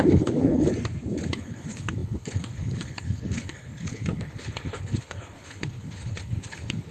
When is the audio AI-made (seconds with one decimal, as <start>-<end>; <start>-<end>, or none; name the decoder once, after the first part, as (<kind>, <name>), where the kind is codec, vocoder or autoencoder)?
0.0-0.7 (codec, HILCodec); 1.3-6.9